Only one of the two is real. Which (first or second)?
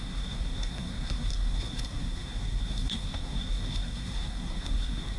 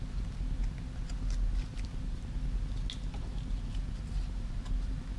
second